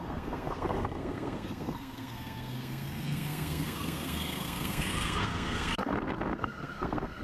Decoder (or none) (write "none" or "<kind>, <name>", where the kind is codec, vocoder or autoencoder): codec, SNAC